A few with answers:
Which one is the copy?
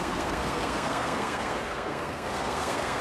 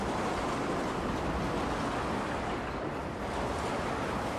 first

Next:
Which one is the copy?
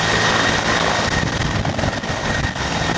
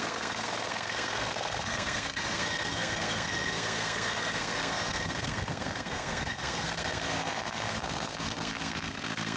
second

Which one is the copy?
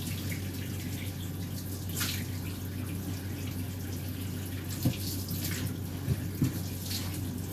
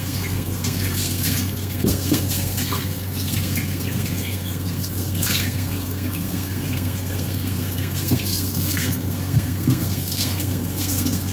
second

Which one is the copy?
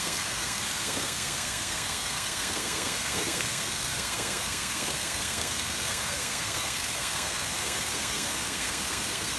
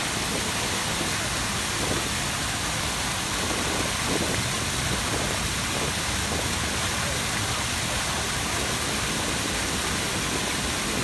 first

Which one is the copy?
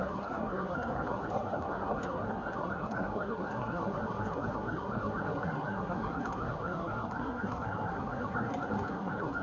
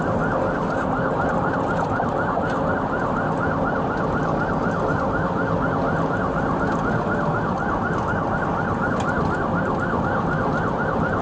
first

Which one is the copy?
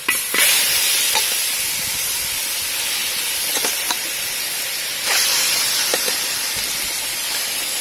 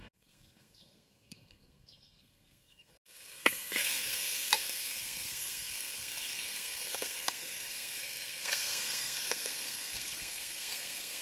second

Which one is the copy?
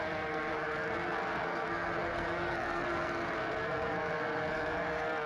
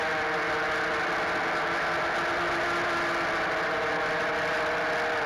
first